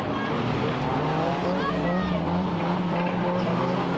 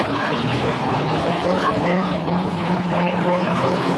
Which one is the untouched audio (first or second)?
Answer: first